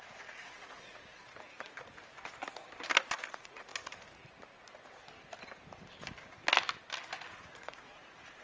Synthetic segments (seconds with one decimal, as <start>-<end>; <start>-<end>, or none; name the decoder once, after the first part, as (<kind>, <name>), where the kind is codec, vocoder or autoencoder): 0.0-1.2 (vocoder, Vocos); 3.3-3.7; 7.3-8.4